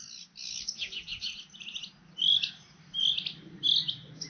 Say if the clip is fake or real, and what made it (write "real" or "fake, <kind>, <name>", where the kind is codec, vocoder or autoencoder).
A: real